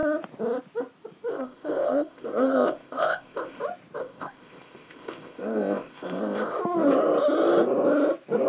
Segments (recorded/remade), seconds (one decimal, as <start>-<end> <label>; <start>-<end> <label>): 0.0-1.3 recorded; 1.3-3.6 remade; 3.6-4.0 recorded; 4.0-6.6 remade; 6.6-8.5 recorded